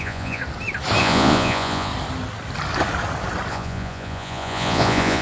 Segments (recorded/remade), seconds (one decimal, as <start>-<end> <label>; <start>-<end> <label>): 0.0-0.4 remade; 0.4-1.0 recorded; 1.0-1.9 remade; 1.9-3.5 recorded; 3.5-5.2 remade